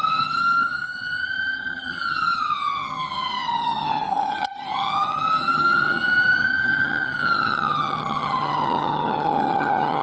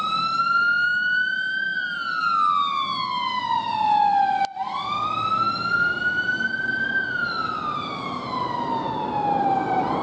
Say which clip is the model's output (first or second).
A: first